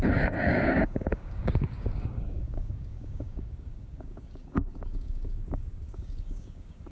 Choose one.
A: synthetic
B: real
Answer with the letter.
A